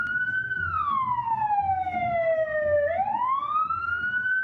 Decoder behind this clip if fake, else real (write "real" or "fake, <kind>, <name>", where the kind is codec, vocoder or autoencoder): real